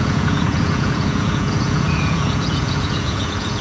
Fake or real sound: fake